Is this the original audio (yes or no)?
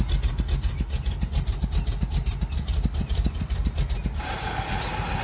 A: yes